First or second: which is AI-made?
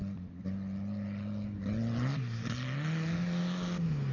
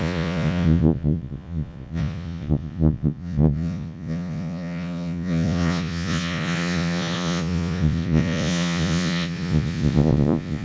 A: second